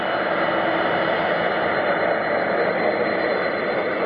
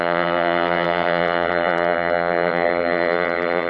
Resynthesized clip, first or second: second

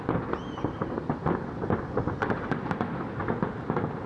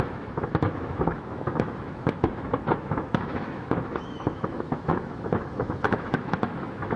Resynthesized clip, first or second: second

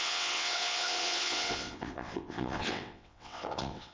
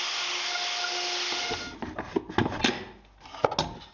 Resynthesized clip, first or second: first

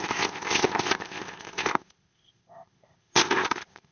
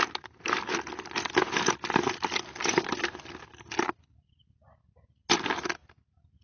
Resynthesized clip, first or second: first